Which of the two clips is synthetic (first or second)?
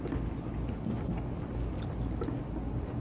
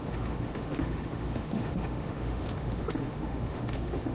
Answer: second